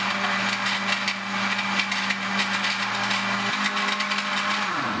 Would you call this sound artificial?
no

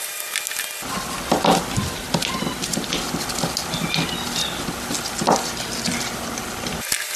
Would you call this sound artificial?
no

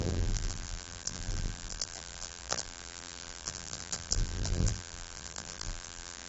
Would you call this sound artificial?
yes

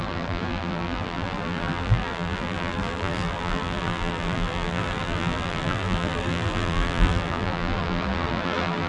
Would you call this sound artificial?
yes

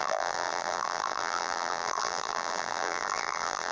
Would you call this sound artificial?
yes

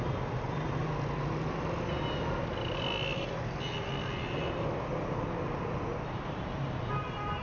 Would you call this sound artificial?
no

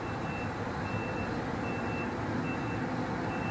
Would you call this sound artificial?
no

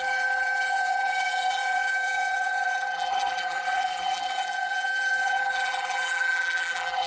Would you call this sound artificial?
yes